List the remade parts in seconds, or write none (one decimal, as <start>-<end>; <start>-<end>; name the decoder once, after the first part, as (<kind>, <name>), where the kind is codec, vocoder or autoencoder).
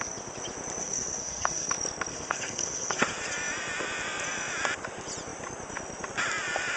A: 0.8-1.7 (codec, SNAC); 2.1-3.0